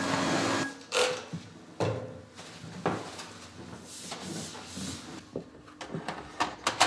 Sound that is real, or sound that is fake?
real